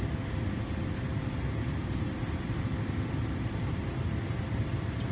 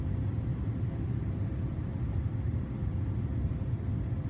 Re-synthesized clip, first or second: second